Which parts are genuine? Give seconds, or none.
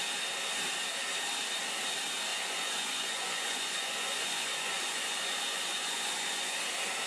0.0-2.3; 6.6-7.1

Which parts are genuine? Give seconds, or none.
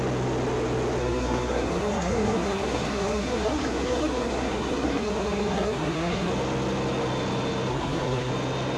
0.0-1.0; 6.3-7.7; 8.3-8.8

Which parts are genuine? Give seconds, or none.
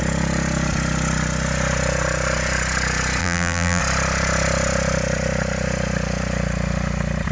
0.0-3.2; 3.8-7.3